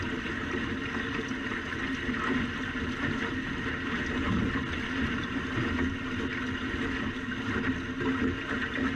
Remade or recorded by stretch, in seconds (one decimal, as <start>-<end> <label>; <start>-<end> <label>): 0.0-5.0 recorded; 5.0-5.7 remade; 5.7-9.0 recorded